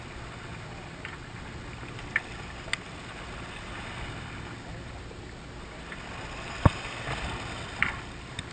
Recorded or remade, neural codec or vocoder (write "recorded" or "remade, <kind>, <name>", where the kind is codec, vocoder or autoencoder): recorded